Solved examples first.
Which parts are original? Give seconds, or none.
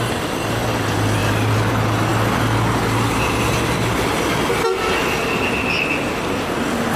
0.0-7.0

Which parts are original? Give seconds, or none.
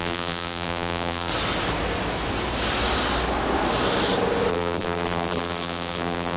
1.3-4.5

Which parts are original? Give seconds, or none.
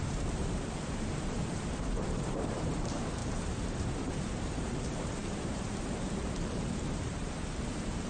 none